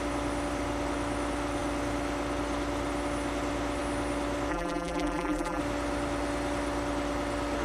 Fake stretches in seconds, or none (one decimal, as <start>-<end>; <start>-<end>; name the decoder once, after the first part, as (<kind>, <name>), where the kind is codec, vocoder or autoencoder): 4.5-5.6 (vocoder, BigVGAN v2)

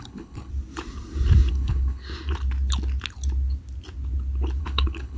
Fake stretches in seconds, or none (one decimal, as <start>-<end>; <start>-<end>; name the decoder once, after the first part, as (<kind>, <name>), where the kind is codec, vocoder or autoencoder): 0.0-0.5 (codec, HILCodec); 1.5-2.0; 4.6-5.2